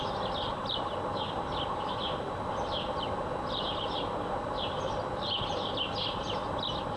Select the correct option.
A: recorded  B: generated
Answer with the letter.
A